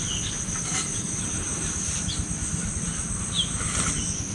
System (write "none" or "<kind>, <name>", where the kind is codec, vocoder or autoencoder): none